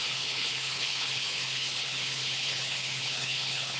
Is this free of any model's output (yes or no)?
no